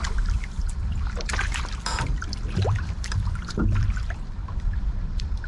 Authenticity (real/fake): fake